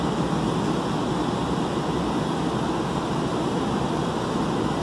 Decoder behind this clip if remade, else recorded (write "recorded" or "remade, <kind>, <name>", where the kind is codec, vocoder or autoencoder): recorded